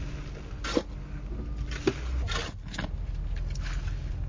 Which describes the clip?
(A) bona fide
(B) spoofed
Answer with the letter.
A